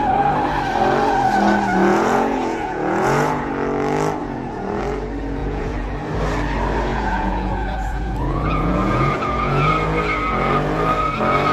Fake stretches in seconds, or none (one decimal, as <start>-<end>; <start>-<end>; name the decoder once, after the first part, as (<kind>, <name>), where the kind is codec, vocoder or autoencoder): 1.9-3.5 (vocoder, Vocos); 4.2-4.8; 5.4-5.9; 6.9-9.7